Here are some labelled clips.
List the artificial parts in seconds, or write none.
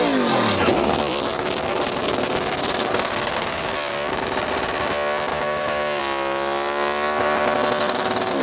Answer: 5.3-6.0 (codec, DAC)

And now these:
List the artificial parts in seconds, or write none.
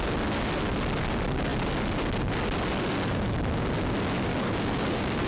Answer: 4.3-5.3 (codec, DAC)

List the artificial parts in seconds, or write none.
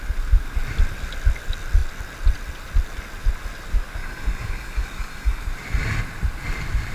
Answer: 4.0-5.4 (codec, DAC)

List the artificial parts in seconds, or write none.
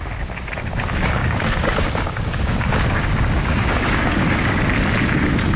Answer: 1.2-4.6 (codec, DAC)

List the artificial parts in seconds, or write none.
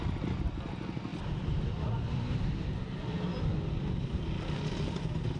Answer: none